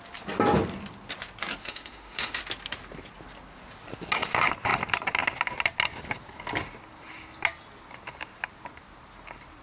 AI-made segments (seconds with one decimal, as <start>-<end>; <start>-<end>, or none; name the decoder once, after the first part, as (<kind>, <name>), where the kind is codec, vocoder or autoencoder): 1.6-2.4 (autoencoder, DAC-VAE)